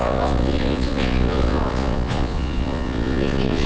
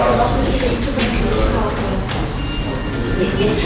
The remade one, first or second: first